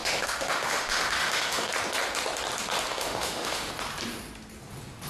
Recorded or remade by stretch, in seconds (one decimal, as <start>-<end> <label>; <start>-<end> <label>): 0.0-1.7 remade; 1.7-2.9 recorded; 2.9-3.7 remade; 3.7-5.1 recorded